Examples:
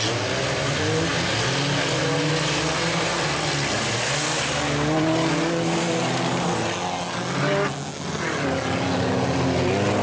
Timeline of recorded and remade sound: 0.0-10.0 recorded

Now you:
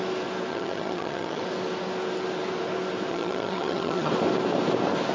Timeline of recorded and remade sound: 0.0-0.5 recorded; 0.5-1.4 remade; 1.4-3.1 recorded; 3.1-4.1 remade; 4.1-5.1 recorded

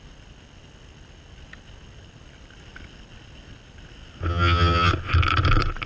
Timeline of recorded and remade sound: 0.0-4.3 recorded; 4.3-4.9 remade; 4.9-5.9 recorded

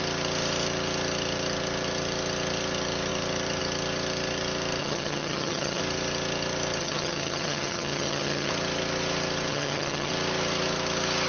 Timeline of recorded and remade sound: 0.0-4.8 recorded; 4.8-5.8 remade; 5.8-6.8 recorded; 6.8-8.5 remade; 8.5-9.5 recorded; 9.5-10.1 remade; 10.1-11.3 recorded

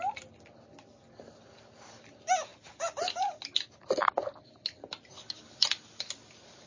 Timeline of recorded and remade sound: 0.0-6.7 recorded